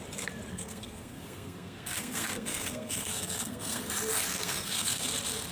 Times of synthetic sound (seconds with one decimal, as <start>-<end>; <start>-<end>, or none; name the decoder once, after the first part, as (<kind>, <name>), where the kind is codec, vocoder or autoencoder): 0.5-3.8 (codec, SNAC); 4.3-5.1